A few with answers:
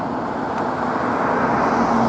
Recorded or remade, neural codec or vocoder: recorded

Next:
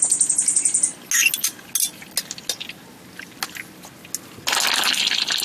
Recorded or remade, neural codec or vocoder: recorded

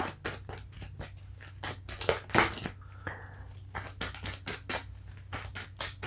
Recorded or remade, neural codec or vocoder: recorded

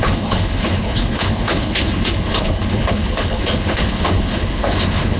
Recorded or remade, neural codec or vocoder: remade, codec, HILCodec